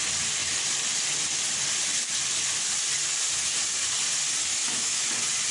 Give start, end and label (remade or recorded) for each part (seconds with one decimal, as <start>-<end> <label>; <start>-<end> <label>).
0.0-4.6 recorded; 4.6-5.1 remade; 5.1-5.5 recorded